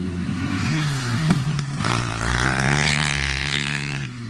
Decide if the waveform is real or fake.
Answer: fake